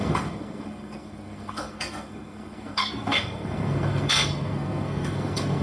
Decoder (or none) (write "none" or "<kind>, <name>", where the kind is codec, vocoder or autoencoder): codec, SNAC